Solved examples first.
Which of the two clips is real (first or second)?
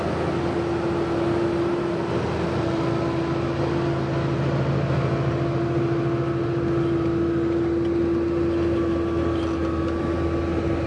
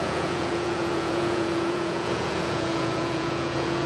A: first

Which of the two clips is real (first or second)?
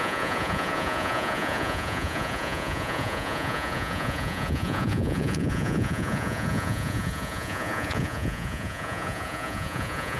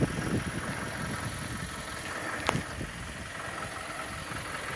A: second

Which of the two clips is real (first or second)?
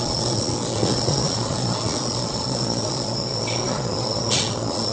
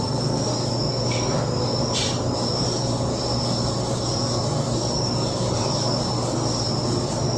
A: second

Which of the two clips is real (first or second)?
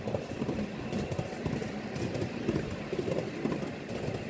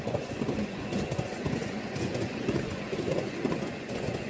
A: first